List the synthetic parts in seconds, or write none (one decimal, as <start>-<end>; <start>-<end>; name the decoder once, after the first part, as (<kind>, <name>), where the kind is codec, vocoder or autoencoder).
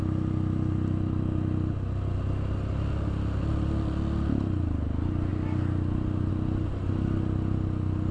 none